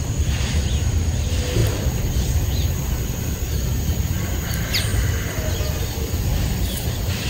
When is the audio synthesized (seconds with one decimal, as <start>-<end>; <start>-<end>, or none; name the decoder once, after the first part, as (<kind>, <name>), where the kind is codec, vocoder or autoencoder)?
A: 1.6-4.5 (vocoder, BigVGAN v2); 4.9-6.8